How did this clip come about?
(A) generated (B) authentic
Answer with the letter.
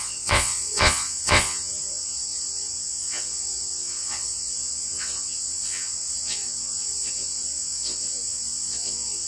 A